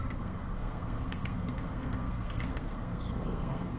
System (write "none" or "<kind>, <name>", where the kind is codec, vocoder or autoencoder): codec, SNAC